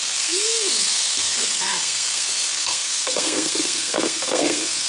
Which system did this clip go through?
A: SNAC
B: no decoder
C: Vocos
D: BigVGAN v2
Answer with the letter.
A